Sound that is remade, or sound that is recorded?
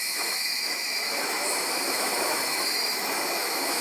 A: remade